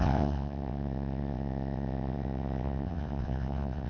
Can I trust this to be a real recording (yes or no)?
no